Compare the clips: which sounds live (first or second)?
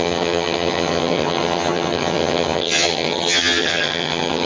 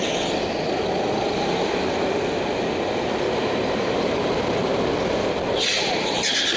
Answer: second